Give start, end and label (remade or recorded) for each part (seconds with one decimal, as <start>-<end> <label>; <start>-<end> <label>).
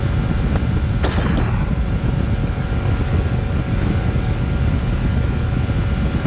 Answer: 0.0-2.4 recorded; 2.4-5.6 remade; 5.6-6.3 recorded